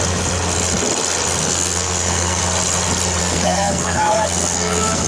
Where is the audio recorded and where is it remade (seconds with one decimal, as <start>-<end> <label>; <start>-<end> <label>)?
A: 0.0-1.4 recorded; 1.4-2.4 remade; 2.4-3.2 recorded; 3.2-5.1 remade